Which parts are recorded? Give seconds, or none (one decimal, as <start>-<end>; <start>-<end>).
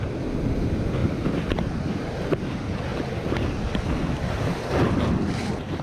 0.0-1.0; 2.0-5.8